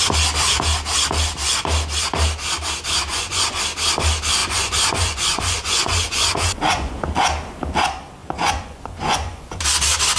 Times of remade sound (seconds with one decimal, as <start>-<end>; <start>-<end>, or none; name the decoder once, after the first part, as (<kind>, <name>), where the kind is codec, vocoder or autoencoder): 3.1-3.6 (vocoder, Vocos); 4.4-7.0; 8.2-9.6